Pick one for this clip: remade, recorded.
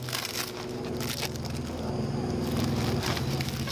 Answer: recorded